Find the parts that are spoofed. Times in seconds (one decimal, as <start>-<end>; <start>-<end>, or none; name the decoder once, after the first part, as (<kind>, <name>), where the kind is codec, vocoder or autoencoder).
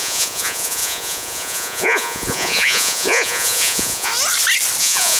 0.0-4.1 (vocoder, Vocos); 4.8-5.2